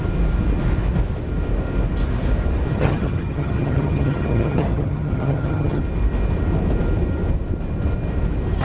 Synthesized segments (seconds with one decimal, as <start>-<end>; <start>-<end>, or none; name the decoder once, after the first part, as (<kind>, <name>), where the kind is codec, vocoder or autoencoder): 2.7-5.8 (vocoder, HiFi-GAN)

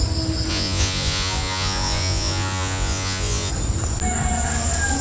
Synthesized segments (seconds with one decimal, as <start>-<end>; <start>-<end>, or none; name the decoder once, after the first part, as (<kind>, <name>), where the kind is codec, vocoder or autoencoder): 0.5-3.5 (vocoder, Vocos)

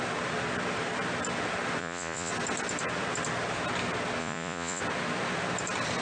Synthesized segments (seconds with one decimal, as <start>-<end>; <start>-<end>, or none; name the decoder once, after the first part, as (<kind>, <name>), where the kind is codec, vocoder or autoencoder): 1.8-2.3 (vocoder, Vocos); 4.2-4.8